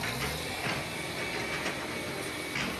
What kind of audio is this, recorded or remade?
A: recorded